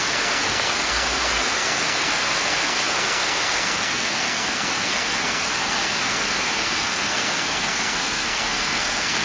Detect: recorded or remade remade